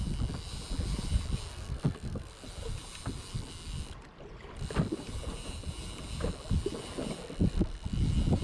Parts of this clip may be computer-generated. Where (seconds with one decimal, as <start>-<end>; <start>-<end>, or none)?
1.5-2.3